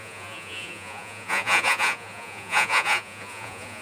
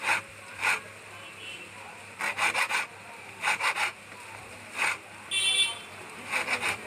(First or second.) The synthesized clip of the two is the first